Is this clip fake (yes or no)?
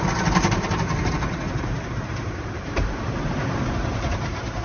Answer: yes